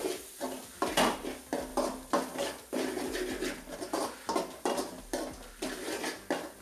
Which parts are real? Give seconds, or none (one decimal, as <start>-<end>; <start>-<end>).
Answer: 0.0-6.6